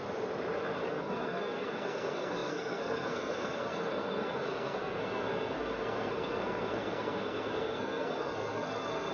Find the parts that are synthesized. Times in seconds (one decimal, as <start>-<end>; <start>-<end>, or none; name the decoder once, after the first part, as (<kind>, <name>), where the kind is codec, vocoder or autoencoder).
0.9-9.1 (codec, SNAC)